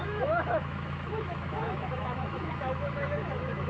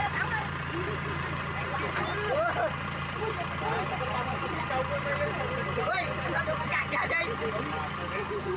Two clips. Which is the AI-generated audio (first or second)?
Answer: first